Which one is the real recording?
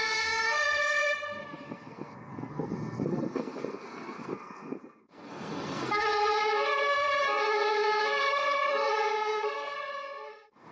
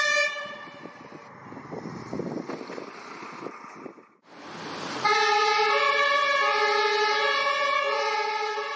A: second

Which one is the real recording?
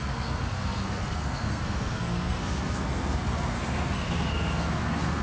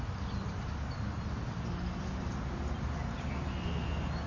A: second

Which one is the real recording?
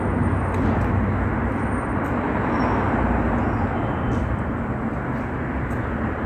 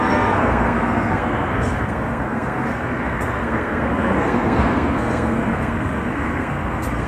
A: first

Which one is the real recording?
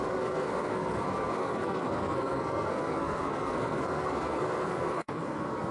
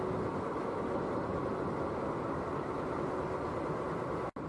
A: second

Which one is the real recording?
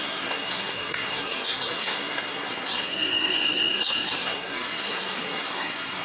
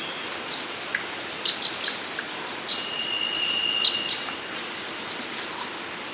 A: second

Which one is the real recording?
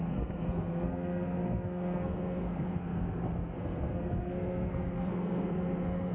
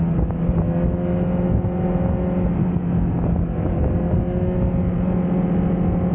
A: second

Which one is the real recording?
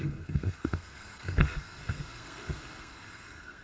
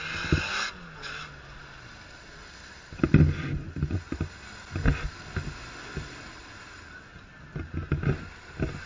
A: second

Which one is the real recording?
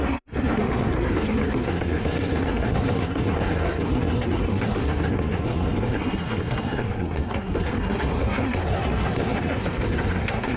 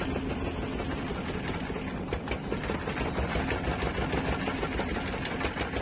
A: second